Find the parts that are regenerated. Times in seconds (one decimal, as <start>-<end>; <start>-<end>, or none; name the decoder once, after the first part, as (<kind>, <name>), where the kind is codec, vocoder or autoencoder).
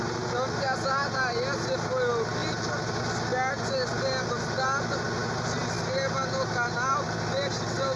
none